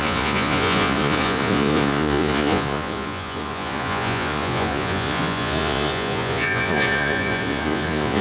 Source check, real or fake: fake